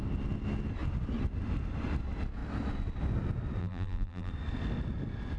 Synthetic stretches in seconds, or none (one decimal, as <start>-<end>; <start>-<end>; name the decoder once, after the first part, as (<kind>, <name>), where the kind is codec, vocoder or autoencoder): 3.6-4.3 (vocoder, BigVGAN v2)